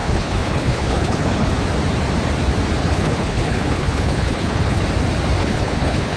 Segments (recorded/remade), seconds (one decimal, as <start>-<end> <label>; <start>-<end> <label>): 0.0-1.5 remade; 1.5-2.8 recorded; 2.8-4.8 remade; 4.8-5.4 recorded; 5.4-6.2 remade